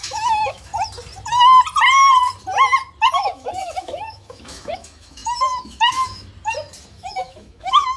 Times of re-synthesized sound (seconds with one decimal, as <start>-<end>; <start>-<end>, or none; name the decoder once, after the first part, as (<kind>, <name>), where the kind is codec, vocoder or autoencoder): 0.0-0.7 (autoencoder, DAC-VAE); 3.1-6.3; 6.9-8.0